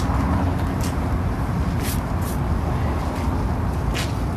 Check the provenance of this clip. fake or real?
real